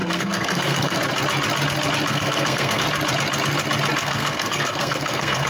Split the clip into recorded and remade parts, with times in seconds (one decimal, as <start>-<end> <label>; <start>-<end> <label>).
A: 0.0-1.0 remade; 1.0-2.1 recorded; 2.1-2.8 remade; 2.8-4.0 recorded; 4.0-5.5 remade